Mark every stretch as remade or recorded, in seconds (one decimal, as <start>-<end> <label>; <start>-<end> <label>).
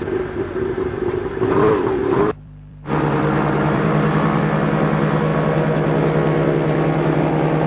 0.0-2.0 recorded; 2.0-4.4 remade; 4.4-7.7 recorded